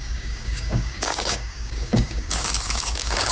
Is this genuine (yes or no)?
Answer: no